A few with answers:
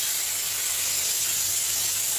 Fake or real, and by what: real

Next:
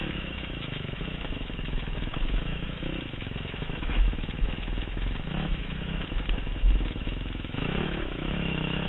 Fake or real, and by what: fake, autoencoder, DAC-VAE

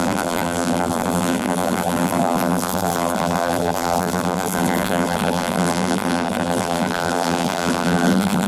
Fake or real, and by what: fake, vocoder, BigVGAN v2